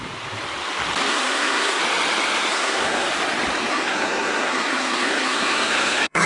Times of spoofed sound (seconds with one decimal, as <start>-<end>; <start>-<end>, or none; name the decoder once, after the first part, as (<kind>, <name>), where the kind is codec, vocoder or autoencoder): 1.1-1.8 (codec, SNAC); 2.5-3.1; 3.7-6.3